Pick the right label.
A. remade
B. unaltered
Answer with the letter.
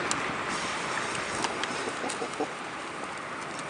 B